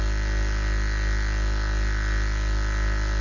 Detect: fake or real real